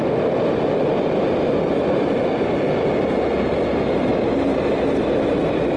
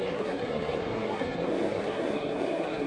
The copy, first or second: second